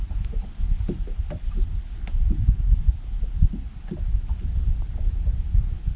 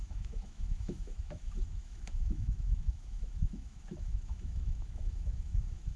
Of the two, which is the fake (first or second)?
second